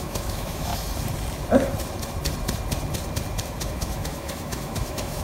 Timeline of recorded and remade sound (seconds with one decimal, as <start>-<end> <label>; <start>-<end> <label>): 0.0-0.7 remade; 0.7-3.7 recorded; 3.7-5.2 remade